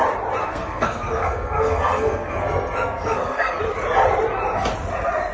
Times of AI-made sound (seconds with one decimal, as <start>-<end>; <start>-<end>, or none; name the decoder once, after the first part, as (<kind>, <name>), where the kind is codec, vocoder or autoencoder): 0.4-3.6 (codec, SNAC)